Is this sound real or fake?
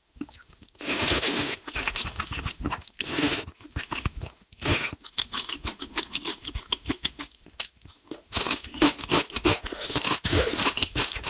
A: fake